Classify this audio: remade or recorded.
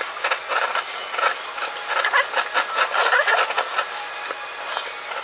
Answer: recorded